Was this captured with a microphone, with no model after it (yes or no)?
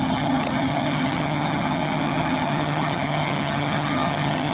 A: no